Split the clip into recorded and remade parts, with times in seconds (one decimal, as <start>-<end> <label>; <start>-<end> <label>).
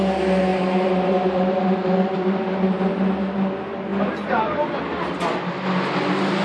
0.0-0.5 recorded; 0.5-2.9 remade; 2.9-6.4 recorded